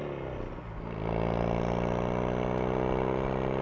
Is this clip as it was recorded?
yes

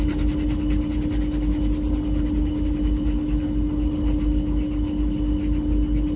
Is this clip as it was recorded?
yes